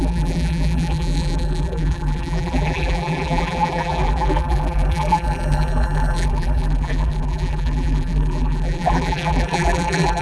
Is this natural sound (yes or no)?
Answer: no